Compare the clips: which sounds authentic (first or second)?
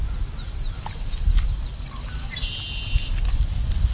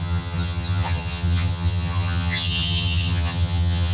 first